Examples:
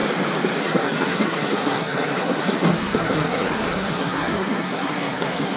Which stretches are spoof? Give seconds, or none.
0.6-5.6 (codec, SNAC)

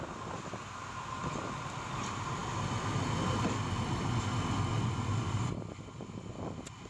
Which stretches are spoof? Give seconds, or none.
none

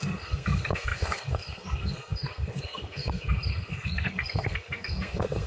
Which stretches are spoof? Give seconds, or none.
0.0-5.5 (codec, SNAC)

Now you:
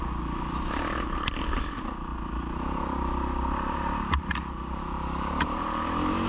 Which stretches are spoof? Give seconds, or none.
none

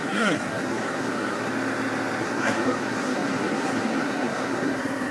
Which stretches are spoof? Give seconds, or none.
0.0-1.5 (codec, SNAC); 2.2-5.1

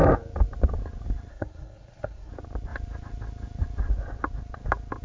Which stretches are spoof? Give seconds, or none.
1.3-2.3 (codec, SNAC)